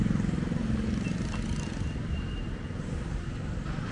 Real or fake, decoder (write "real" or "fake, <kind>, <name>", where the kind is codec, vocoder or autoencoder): real